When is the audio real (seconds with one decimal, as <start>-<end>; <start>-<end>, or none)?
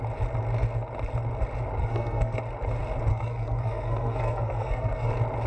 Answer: 0.0-1.8; 2.4-3.1; 5.1-5.5